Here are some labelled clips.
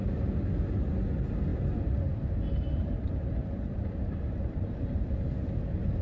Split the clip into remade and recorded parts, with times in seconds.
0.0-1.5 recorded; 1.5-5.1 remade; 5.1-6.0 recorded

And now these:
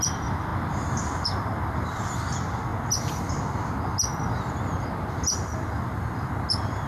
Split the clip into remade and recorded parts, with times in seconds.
0.0-0.5 recorded; 0.5-2.3 remade; 2.3-6.9 recorded

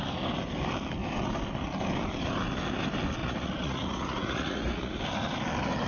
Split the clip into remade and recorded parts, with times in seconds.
0.0-3.2 recorded; 3.2-5.0 remade; 5.0-5.9 recorded